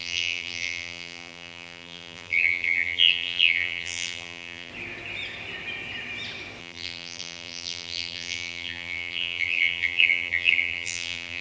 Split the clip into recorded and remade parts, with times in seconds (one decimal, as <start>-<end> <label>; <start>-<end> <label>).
0.0-4.7 remade; 4.7-6.6 recorded; 6.6-11.4 remade